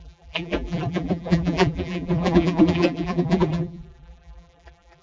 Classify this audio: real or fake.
fake